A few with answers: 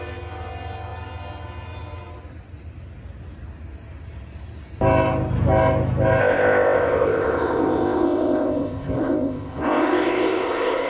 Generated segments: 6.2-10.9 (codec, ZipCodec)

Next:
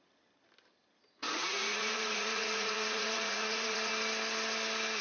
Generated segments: 1.2-3.9 (vocoder, Vocos)

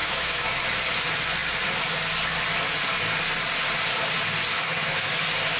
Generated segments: 0.0-0.6 (autoencoder, DAC-VAE); 4.5-5.1